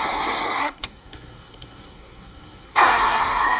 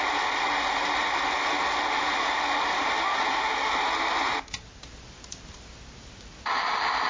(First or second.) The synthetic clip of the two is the first